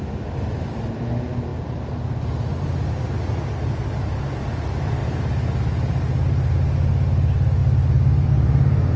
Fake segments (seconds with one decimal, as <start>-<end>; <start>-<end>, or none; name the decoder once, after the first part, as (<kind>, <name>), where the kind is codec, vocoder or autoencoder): none